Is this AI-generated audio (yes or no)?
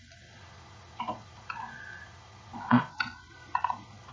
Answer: yes